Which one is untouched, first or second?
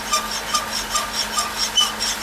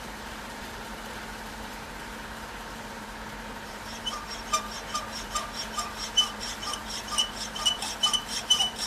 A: first